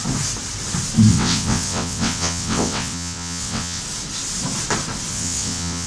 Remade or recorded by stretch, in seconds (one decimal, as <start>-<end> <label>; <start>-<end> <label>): 0.0-1.1 recorded; 1.1-3.8 remade; 3.8-5.1 recorded; 5.1-5.9 remade